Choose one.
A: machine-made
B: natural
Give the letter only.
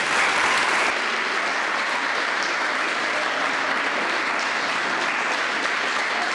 B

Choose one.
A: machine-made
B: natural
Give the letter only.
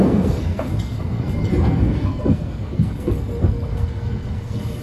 A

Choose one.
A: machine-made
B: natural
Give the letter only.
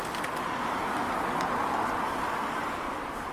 B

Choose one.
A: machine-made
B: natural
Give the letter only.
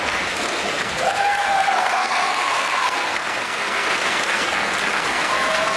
A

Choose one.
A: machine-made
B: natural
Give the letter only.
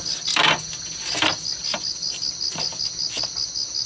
B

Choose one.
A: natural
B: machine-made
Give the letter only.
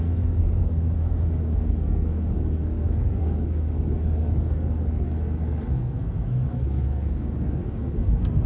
B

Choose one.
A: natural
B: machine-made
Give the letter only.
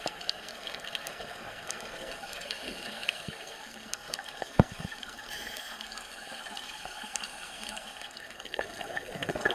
B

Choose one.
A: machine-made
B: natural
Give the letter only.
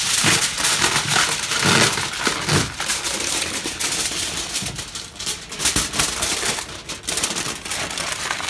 B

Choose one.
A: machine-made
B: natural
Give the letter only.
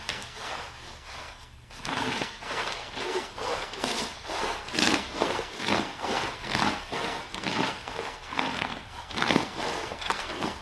A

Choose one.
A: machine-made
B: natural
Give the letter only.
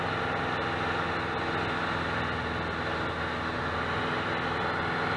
B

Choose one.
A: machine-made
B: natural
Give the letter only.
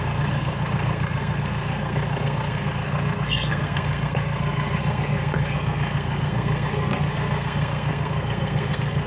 A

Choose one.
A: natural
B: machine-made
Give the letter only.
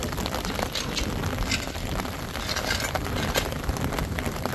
A